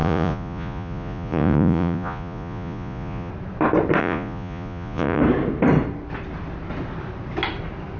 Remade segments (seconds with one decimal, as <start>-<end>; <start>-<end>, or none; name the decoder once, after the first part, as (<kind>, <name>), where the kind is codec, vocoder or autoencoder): 0.0-3.3 (vocoder, Vocos); 4.0-5.2